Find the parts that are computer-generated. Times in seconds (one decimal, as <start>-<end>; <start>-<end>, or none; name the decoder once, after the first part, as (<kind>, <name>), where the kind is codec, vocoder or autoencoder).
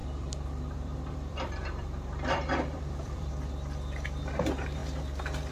0.0-3.3 (vocoder, BigVGAN v2)